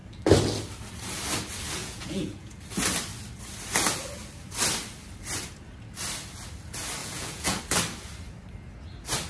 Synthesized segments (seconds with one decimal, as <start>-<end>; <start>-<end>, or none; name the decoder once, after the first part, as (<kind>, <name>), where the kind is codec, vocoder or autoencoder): 1.8-2.6 (vocoder, Vocos); 7.0-7.6